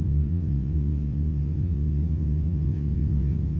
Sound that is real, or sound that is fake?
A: fake